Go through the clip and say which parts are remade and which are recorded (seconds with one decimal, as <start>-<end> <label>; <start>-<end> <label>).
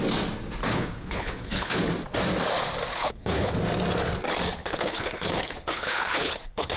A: 0.0-0.7 recorded; 0.7-1.9 remade; 1.9-2.9 recorded; 2.9-3.5 remade; 3.5-4.6 recorded; 4.6-6.8 remade